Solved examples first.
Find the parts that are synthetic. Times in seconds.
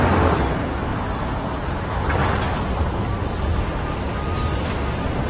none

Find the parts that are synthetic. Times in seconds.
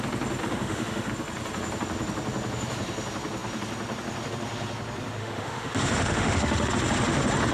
0.4-1.1 (autoencoder, DAC-VAE); 5.2-6.7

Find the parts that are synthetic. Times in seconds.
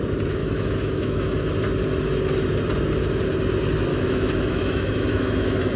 0.4-1.5 (autoencoder, DAC-VAE); 3.9-5.8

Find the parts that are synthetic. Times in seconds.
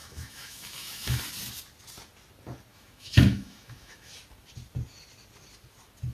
0.0-1.2 (autoencoder, DAC-VAE); 2.7-4.1